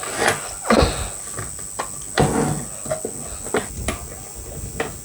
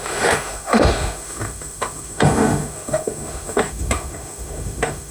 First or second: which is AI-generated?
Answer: second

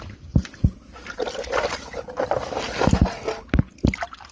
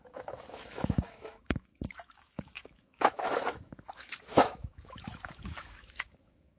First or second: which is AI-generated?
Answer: second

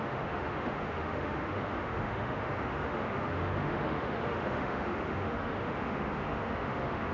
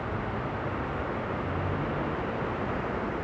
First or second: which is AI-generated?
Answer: first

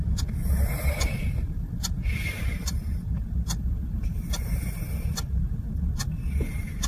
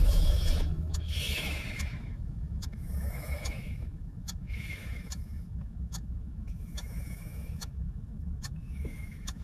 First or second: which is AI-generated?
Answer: second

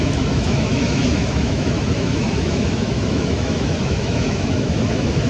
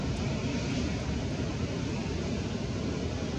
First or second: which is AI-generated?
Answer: first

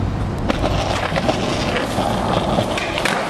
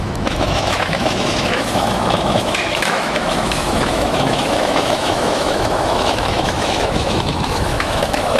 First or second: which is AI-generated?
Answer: second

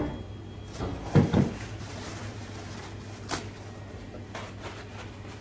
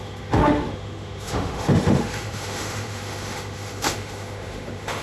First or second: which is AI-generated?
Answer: second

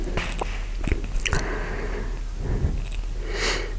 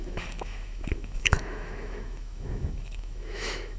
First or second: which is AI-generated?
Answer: second